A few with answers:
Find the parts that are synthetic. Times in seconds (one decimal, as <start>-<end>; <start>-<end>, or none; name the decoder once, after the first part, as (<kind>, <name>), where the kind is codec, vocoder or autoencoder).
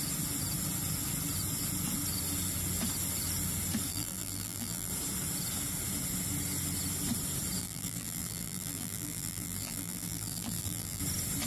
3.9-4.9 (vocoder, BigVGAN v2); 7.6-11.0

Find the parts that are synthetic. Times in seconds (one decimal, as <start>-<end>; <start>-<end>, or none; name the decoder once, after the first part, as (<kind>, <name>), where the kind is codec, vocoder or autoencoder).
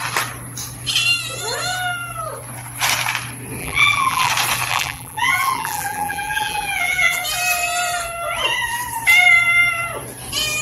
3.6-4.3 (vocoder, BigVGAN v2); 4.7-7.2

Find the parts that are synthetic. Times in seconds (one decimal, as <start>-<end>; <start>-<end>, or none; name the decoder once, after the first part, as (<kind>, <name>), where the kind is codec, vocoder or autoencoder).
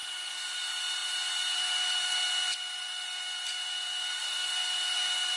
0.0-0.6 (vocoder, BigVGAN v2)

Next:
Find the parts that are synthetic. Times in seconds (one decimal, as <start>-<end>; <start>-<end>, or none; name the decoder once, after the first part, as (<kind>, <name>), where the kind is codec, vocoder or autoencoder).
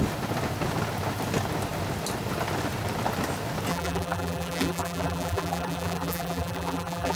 3.7-7.2 (vocoder, BigVGAN v2)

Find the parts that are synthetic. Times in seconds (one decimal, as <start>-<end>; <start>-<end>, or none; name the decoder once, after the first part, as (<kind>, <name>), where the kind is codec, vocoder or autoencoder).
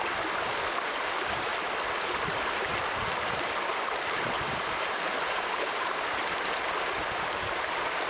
0.0-1.5 (vocoder, BigVGAN v2); 2.0-2.7; 4.0-8.1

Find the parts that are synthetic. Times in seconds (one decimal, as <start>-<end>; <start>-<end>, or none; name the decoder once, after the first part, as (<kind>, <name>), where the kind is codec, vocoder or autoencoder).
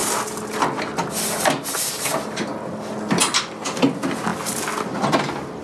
4.3-5.6 (vocoder, BigVGAN v2)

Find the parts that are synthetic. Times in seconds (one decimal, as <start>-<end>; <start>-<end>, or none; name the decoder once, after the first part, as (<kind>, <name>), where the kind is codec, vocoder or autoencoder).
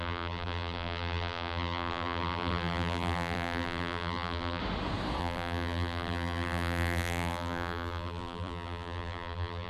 0.0-4.6 (vocoder, BigVGAN v2); 5.2-9.7